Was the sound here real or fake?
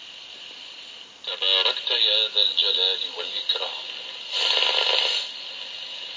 real